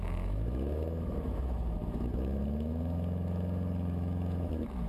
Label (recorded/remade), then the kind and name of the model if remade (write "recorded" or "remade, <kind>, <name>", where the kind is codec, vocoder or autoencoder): remade, autoencoder, DAC-VAE